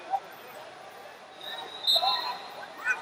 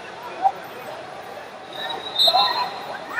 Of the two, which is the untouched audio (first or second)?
first